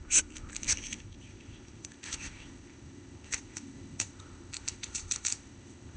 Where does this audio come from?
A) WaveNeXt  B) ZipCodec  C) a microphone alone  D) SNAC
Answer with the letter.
B